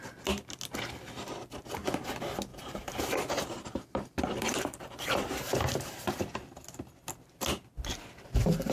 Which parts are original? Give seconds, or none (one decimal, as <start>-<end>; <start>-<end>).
0.0-2.5; 6.1-8.7